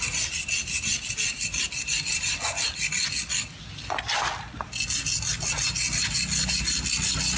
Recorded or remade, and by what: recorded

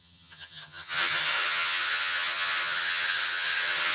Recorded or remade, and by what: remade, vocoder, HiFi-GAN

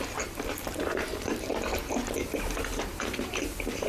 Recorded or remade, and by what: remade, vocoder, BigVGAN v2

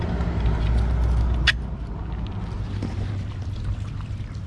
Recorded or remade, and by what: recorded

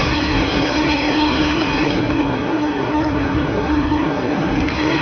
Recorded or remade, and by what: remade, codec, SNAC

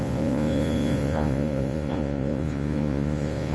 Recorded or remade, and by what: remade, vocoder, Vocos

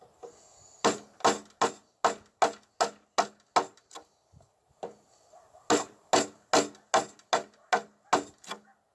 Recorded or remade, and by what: recorded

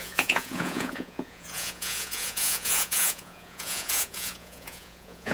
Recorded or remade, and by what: remade, vocoder, Vocos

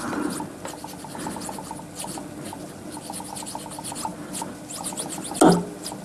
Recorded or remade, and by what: recorded